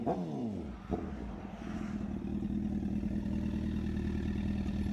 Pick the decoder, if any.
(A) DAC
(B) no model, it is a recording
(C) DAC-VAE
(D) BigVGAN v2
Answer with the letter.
B